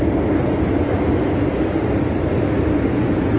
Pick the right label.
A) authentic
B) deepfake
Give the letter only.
A